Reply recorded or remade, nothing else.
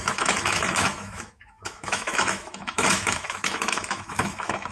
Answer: remade